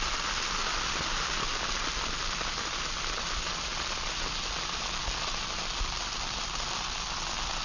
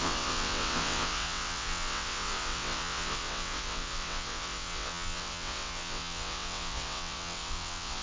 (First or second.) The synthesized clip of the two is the second